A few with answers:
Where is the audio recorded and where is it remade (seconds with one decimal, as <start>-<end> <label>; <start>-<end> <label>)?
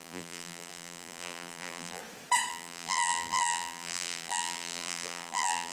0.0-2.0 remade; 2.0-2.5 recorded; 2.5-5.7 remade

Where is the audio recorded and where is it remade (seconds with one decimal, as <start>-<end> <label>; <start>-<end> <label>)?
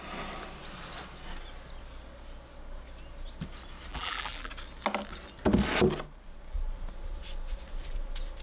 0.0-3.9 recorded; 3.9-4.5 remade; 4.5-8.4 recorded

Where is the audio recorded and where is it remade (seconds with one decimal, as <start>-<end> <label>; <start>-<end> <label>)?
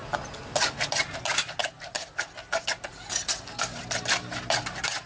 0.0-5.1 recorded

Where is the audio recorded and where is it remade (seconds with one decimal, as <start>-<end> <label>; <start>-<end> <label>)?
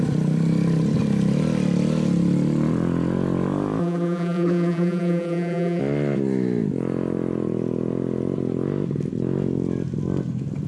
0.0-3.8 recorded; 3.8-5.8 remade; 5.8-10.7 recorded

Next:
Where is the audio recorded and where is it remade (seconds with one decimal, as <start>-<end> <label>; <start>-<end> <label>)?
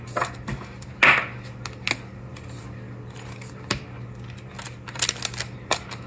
0.0-6.1 recorded